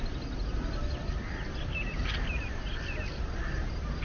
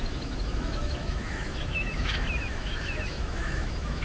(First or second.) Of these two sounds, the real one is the first